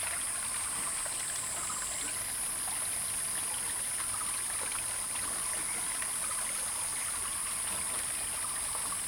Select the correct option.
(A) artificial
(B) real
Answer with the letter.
B